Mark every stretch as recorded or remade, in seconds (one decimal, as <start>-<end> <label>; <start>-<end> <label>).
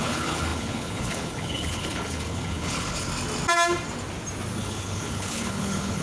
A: 0.0-3.1 remade; 3.1-4.6 recorded; 4.6-6.0 remade